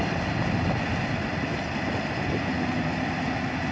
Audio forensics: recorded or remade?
recorded